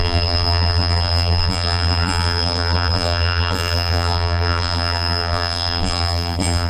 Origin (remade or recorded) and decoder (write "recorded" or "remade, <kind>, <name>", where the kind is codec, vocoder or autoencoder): remade, vocoder, BigVGAN v2